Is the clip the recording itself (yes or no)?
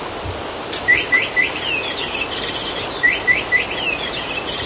yes